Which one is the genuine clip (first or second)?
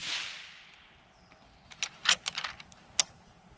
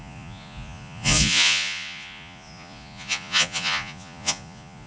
first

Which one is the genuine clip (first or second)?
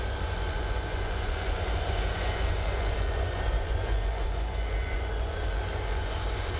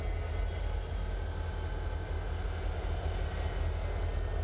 second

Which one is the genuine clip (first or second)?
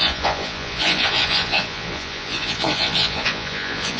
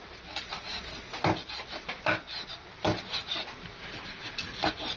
second